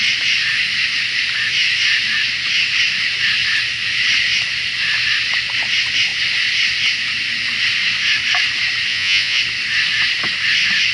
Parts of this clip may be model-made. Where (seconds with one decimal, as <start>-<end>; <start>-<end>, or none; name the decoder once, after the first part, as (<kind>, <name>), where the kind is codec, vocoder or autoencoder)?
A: 8.9-9.4 (vocoder, Vocos)